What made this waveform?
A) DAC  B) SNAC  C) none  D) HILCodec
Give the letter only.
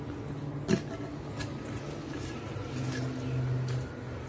C